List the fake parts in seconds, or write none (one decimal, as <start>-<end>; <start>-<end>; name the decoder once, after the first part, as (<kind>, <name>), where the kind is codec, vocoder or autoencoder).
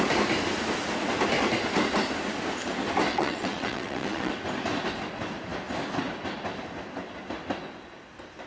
3.1-4.3 (vocoder, WaveNeXt)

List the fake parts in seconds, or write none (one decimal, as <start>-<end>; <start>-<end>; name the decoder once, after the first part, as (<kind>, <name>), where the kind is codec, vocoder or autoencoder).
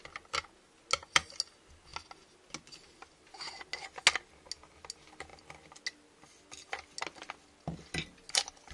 none